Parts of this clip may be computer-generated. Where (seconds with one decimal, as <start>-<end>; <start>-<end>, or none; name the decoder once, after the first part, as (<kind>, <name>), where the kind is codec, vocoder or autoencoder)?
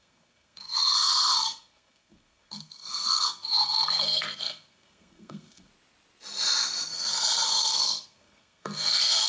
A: 0.0-5.7 (codec, SNAC); 6.9-9.3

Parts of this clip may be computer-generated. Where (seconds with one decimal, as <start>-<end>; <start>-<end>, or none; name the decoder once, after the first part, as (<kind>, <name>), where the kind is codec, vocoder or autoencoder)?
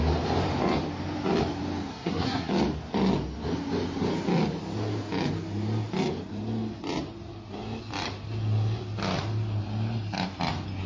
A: 1.9-2.5 (codec, SNAC)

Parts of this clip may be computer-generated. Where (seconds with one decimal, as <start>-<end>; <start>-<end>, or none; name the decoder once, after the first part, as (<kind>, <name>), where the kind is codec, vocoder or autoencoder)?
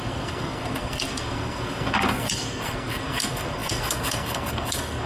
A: 0.0-5.1 (codec, SNAC)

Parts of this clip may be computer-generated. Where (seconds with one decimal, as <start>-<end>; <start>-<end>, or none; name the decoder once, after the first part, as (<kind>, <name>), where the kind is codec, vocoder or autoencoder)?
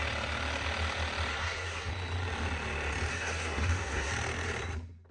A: 1.3-1.9 (codec, SNAC); 3.1-4.1